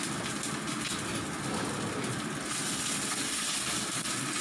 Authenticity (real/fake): real